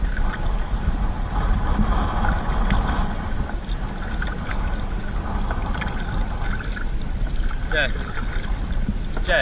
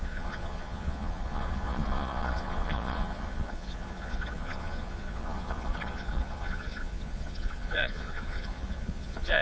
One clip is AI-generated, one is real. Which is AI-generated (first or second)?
second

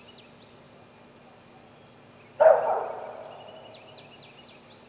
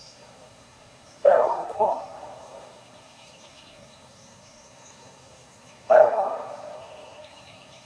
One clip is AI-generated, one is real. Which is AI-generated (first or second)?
second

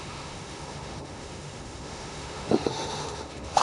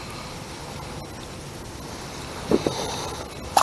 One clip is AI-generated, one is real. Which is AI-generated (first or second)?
first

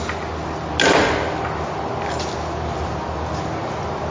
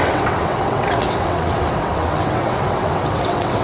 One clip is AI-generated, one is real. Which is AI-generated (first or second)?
second